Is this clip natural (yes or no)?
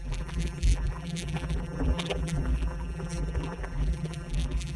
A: no